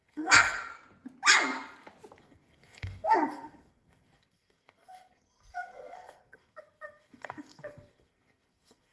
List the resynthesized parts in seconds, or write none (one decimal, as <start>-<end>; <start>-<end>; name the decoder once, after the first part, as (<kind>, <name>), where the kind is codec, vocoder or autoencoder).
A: 0.0-0.7 (codec, SNAC); 2.2-8.9